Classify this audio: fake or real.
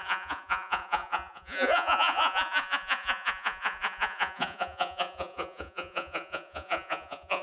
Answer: fake